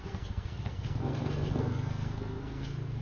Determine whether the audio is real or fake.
fake